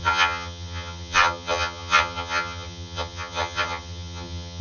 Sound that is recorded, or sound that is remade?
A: remade